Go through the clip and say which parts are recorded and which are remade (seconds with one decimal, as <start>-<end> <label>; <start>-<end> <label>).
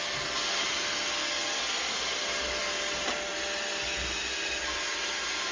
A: 0.0-5.5 recorded